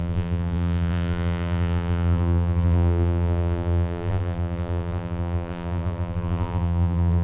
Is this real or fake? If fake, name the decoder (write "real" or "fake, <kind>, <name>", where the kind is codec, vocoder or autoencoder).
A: fake, vocoder, BigVGAN v2